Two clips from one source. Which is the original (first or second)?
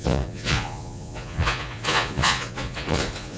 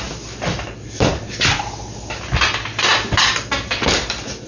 second